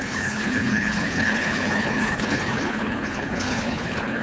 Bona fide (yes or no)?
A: no